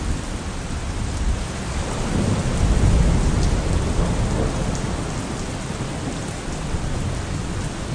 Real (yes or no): yes